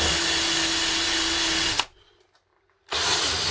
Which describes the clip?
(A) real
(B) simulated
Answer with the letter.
A